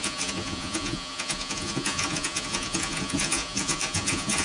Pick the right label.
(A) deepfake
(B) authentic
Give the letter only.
A